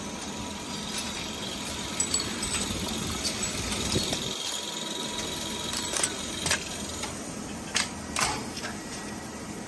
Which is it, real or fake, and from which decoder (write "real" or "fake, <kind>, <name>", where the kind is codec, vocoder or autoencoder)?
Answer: real